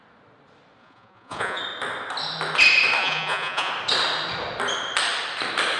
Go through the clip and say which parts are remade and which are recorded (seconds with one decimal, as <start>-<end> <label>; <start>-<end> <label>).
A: 0.0-0.8 recorded; 0.8-1.6 remade; 1.6-3.0 recorded; 3.0-3.7 remade; 3.7-5.8 recorded